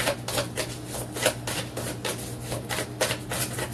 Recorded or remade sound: recorded